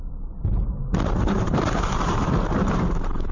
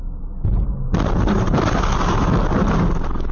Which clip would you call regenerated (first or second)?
first